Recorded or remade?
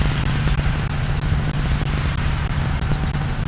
recorded